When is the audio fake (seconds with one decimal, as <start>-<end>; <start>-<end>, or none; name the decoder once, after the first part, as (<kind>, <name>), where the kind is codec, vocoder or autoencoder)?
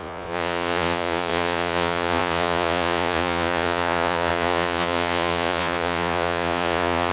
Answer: 0.0-7.1 (vocoder, Vocos)